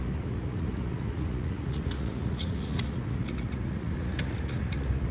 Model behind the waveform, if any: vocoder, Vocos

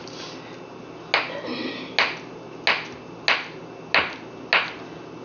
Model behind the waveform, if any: none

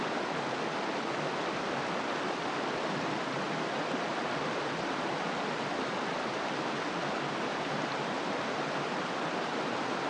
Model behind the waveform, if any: none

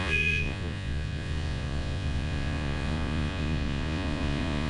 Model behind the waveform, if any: vocoder, Vocos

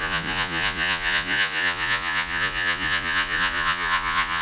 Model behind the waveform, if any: vocoder, Vocos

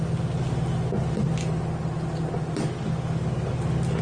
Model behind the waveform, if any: none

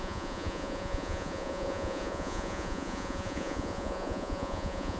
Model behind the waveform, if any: vocoder, Vocos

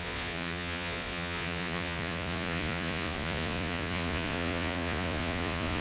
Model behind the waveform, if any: vocoder, Vocos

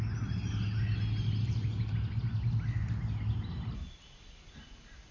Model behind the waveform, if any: none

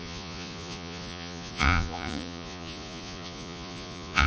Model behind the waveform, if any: vocoder, Vocos